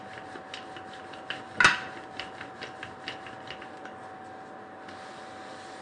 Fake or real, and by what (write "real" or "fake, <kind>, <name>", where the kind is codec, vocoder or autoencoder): real